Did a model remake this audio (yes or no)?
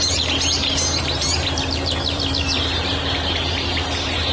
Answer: yes